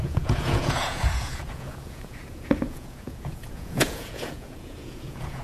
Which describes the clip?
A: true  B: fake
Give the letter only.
B